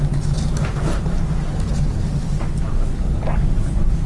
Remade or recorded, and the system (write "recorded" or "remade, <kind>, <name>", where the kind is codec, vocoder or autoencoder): recorded